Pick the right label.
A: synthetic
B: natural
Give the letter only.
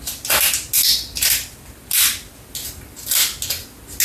B